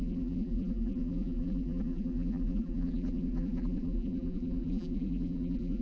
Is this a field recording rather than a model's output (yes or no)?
no